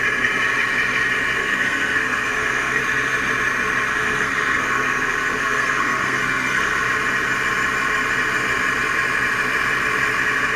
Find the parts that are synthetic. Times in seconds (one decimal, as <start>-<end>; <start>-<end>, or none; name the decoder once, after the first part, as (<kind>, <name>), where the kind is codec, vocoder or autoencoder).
1.4-2.8 (codec, SNAC); 3.9-6.8